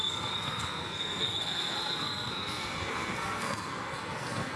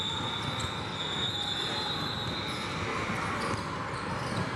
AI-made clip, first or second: first